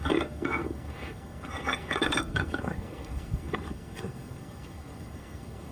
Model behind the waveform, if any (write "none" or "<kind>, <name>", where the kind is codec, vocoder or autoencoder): codec, SNAC